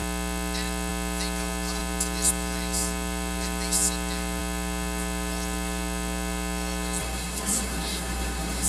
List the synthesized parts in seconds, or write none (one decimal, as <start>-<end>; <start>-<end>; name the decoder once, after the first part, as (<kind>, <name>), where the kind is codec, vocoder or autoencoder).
7.0-8.7 (codec, SNAC)

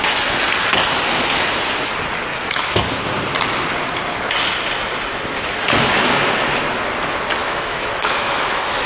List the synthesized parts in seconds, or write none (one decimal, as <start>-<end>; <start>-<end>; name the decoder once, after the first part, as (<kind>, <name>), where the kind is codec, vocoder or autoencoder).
2.3-2.9 (autoencoder, DAC-VAE); 7.4-8.9

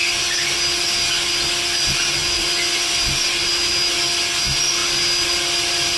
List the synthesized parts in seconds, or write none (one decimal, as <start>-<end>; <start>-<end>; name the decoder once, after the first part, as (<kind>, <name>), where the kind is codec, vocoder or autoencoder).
none

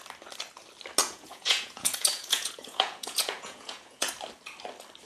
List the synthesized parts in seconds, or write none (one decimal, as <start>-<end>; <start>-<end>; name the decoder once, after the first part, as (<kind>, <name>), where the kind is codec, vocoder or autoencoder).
1.0-4.1 (vocoder, Vocos)

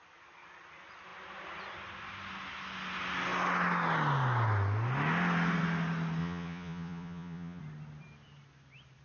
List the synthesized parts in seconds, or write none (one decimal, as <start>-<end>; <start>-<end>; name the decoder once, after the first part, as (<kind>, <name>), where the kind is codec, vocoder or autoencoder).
6.2-7.6 (vocoder, Vocos)

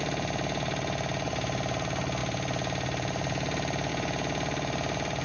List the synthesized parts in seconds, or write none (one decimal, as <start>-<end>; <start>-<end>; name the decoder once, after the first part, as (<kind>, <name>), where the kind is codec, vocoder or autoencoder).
none

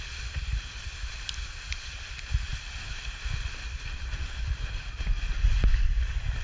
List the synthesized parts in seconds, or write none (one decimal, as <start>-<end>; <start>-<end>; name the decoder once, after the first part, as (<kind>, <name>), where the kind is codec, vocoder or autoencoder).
none

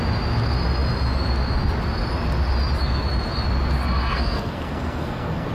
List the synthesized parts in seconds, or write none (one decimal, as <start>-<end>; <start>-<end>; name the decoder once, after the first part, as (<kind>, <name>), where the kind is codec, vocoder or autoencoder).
4.1-5.5 (codec, SNAC)